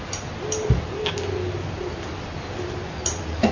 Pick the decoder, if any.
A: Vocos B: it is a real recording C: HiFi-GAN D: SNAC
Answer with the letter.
B